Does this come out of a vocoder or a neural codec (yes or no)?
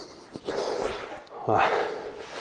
no